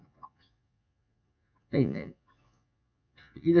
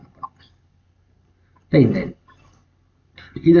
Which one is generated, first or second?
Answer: first